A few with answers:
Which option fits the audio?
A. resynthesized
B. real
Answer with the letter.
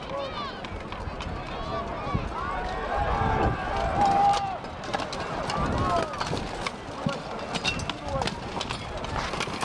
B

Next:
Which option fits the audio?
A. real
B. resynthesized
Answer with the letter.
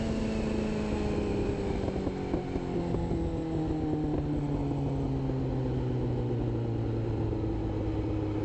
A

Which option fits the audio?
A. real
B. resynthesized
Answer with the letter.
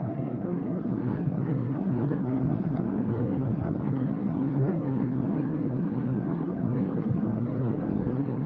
B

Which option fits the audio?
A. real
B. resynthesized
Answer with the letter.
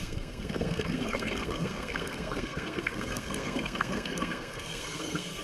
B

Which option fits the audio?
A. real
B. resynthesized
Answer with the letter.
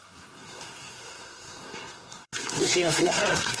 B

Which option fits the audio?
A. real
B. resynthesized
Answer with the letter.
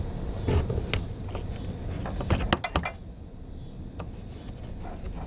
A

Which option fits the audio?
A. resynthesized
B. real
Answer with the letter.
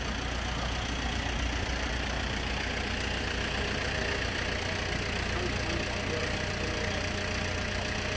B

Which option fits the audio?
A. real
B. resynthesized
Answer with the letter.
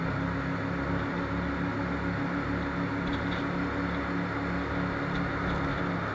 A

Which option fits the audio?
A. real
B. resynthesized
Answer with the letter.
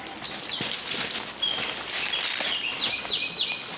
A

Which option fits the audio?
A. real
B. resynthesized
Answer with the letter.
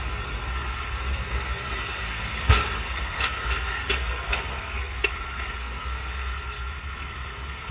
B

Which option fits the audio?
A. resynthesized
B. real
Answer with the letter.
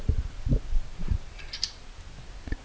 B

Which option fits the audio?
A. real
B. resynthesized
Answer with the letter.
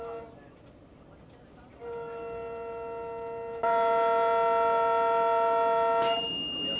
A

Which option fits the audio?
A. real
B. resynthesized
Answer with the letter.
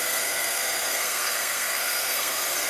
B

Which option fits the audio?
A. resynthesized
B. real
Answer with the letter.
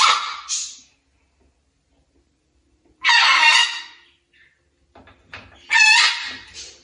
B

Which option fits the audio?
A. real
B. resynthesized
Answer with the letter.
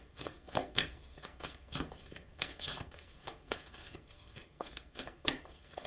B